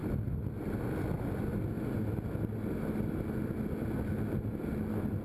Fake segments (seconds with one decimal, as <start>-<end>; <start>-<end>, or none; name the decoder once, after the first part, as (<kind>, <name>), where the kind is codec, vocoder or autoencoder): none